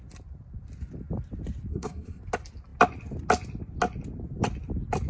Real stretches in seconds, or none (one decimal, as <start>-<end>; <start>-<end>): 0.0-1.7; 2.2-5.1